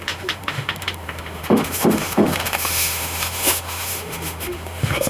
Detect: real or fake fake